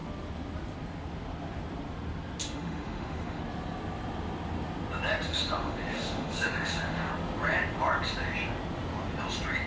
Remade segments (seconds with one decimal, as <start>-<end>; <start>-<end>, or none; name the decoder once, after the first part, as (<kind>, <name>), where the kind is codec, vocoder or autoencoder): 2.4-3.4 (autoencoder, DAC-VAE); 5.3-7.1